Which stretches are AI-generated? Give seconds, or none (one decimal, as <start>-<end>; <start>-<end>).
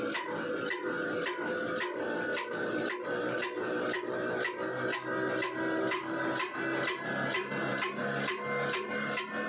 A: none